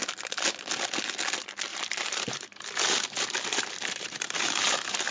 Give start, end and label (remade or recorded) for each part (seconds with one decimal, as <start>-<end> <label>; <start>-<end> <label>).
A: 0.0-1.7 recorded; 1.7-5.1 remade